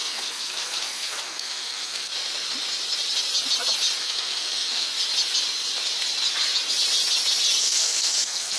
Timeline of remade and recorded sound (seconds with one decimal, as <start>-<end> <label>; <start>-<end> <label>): 0.0-2.1 remade; 2.1-4.0 recorded; 4.0-4.9 remade; 4.9-7.6 recorded; 7.6-8.6 remade

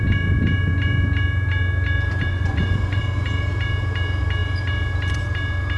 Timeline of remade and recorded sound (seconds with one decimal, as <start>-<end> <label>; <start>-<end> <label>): 0.0-2.3 recorded; 2.3-3.0 remade; 3.0-5.8 recorded

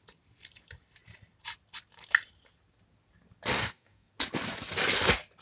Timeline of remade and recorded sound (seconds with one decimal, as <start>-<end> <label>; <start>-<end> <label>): 0.0-3.5 recorded; 3.5-4.1 remade; 4.1-5.4 recorded

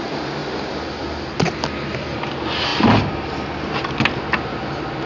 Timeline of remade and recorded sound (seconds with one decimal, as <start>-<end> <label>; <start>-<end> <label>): 0.0-5.1 recorded

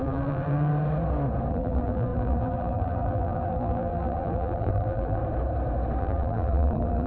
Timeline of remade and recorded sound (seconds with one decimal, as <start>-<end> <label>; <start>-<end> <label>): 0.0-0.7 remade; 0.7-1.5 recorded; 1.5-5.2 remade; 5.2-6.0 recorded; 6.0-7.1 remade

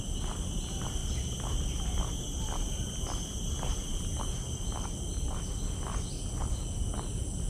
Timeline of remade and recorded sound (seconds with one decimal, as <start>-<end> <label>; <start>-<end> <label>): 0.0-7.5 recorded